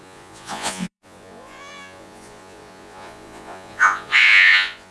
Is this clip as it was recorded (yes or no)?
no